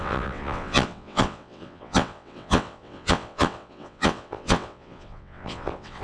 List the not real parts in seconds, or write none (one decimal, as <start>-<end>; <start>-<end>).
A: 0.0-6.0